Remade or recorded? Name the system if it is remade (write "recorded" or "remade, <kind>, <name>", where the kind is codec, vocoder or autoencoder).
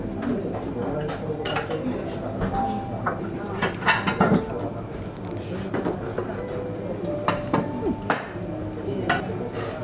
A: recorded